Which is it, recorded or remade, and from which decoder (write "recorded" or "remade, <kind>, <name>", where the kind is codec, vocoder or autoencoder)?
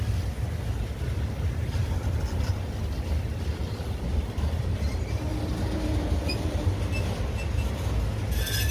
recorded